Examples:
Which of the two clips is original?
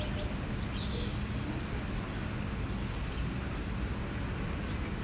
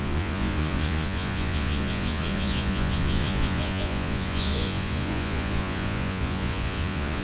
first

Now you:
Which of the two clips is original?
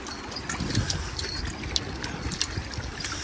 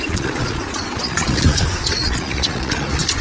first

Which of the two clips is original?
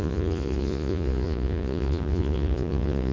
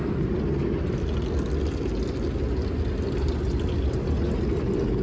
second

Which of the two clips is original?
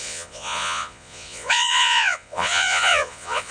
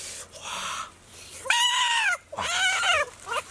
second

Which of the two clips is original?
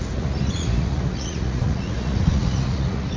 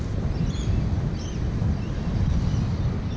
second